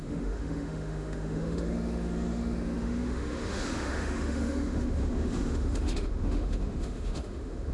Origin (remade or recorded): remade